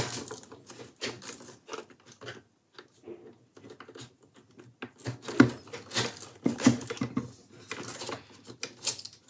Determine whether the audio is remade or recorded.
recorded